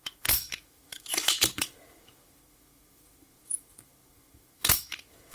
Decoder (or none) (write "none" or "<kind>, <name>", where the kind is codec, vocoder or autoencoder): autoencoder, DAC-VAE